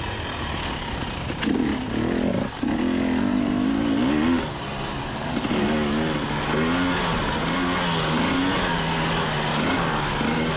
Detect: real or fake real